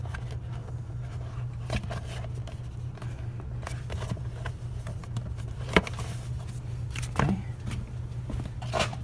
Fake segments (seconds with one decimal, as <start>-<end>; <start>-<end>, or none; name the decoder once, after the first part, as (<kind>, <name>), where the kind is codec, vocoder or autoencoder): 5.0-5.8 (vocoder, BigVGAN v2)